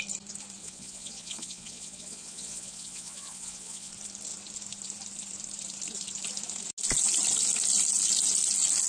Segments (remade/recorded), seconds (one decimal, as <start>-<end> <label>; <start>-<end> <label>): 0.0-0.6 recorded; 0.6-3.9 remade; 3.9-8.9 recorded